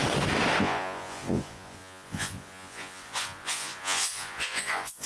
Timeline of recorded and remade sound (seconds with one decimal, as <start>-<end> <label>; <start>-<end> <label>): 0.0-0.6 recorded; 0.6-5.1 remade